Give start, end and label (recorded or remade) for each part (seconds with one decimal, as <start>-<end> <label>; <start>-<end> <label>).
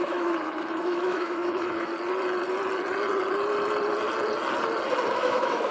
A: 0.0-1.9 remade; 1.9-5.1 recorded; 5.1-5.7 remade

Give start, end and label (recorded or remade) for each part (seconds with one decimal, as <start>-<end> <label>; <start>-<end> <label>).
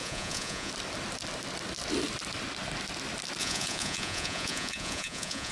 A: 0.0-0.7 remade; 0.7-3.4 recorded; 3.4-5.5 remade